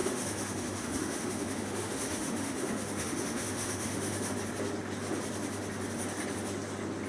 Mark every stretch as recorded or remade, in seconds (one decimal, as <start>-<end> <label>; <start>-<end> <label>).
0.0-4.3 remade; 4.3-7.1 recorded